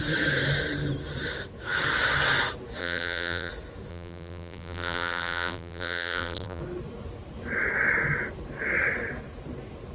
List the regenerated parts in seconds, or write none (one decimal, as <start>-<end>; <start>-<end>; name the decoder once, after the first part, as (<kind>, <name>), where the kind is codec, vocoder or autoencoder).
2.8-3.5 (vocoder, BigVGAN v2); 3.9-6.6